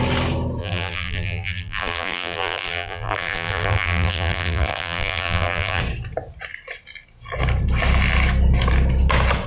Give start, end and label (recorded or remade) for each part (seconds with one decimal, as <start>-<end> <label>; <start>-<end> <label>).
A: 0.0-0.6 recorded; 0.6-5.8 remade; 5.8-9.5 recorded